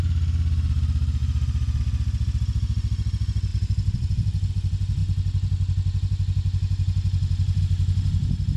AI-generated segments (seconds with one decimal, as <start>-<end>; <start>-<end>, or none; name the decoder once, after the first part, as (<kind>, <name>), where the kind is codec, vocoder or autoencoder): 3.5-4.5 (vocoder, BigVGAN v2)